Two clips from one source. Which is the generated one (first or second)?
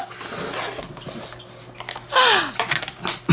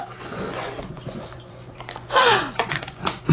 second